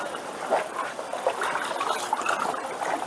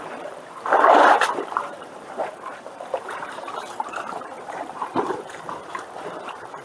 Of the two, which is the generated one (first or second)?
second